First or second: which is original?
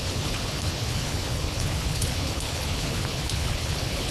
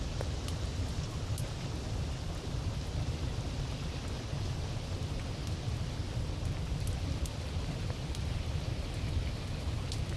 second